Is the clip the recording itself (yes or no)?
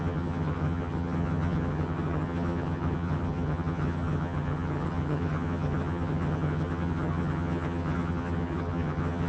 no